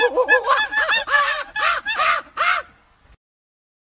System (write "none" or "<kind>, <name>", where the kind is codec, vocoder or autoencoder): none